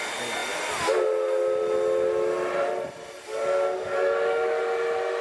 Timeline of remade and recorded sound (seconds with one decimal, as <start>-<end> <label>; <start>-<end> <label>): 0.0-3.3 recorded; 3.3-4.6 remade; 4.6-5.2 recorded